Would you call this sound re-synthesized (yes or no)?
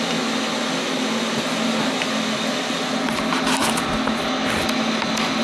no